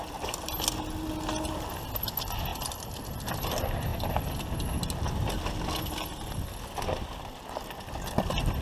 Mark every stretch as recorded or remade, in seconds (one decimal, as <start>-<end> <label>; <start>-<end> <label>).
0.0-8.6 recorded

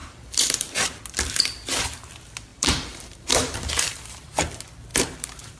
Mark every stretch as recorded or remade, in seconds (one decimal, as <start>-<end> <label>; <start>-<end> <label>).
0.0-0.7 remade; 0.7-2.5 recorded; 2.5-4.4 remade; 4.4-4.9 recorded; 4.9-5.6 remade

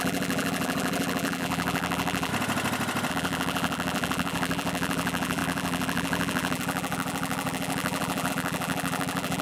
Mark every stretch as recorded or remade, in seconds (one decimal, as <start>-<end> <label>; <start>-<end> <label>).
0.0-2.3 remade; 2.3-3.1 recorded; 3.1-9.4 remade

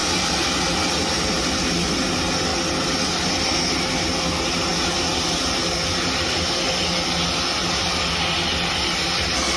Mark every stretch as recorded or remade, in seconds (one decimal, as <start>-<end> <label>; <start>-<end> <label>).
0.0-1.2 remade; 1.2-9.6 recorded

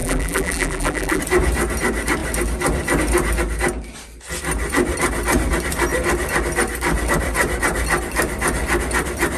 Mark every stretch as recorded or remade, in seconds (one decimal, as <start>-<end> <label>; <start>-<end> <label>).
0.0-1.2 remade; 1.2-9.4 recorded

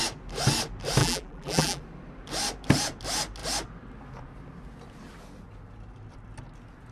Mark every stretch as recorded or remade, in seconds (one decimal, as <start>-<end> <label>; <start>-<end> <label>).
0.0-1.0 recorded; 1.0-1.8 remade; 1.8-6.9 recorded

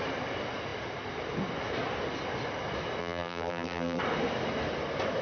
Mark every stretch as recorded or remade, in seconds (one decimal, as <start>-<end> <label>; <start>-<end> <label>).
0.0-3.0 recorded; 3.0-4.0 remade; 4.0-5.2 recorded

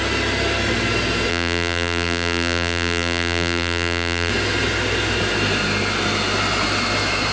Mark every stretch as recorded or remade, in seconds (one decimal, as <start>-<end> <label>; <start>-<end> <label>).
0.0-1.3 recorded; 1.3-4.3 remade; 4.3-7.3 recorded